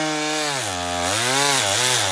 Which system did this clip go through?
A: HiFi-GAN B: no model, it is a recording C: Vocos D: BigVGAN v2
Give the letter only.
B